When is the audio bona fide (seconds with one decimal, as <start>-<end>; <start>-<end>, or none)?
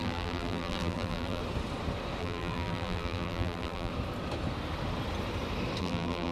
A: 1.4-2.2; 3.9-5.8